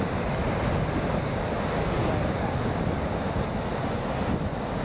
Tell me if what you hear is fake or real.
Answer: real